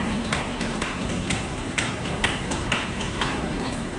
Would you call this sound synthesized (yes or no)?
yes